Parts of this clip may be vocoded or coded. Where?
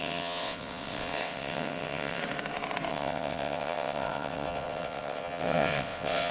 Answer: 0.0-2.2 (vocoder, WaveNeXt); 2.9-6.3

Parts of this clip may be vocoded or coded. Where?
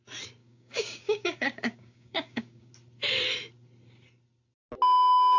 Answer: 0.4-2.7 (codec, DAC)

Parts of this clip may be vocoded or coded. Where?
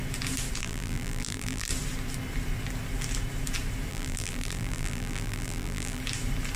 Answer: 0.6-1.7 (vocoder, BigVGAN v2); 3.9-6.0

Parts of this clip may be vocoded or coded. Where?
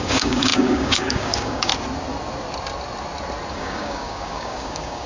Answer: 0.0-1.7 (codec, DAC); 3.5-5.1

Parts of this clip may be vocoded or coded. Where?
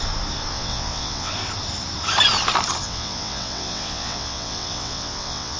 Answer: 0.5-1.3 (vocoder, WaveNeXt); 2.8-5.6